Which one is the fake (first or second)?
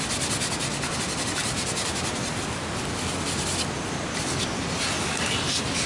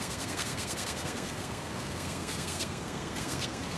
second